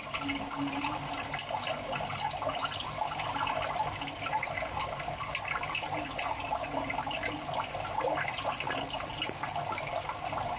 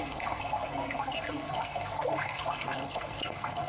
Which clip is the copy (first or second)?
second